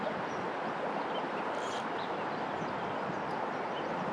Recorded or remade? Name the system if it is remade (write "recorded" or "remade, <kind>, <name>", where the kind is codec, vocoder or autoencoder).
recorded